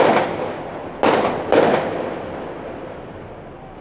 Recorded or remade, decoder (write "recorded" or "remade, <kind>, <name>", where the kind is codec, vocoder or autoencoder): recorded